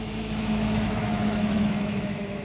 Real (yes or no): no